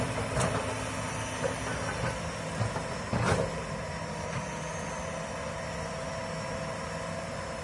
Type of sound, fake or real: real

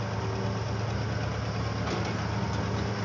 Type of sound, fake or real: real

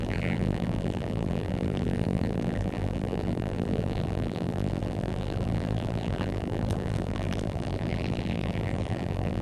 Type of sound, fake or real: fake